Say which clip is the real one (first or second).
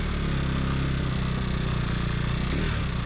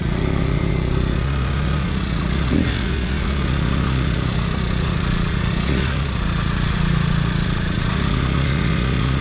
first